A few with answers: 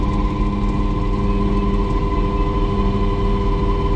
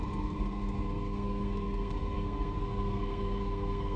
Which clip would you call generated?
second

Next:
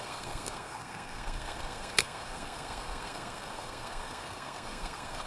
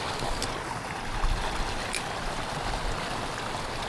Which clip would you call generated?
first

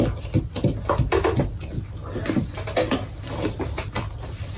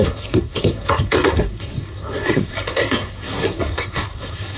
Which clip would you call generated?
second